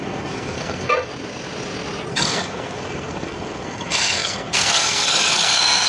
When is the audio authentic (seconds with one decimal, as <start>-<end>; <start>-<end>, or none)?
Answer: 1.1-2.1